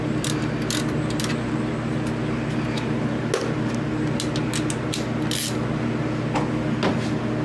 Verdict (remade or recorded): recorded